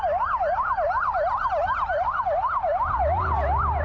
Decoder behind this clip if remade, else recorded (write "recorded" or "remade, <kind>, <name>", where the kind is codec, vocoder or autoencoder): recorded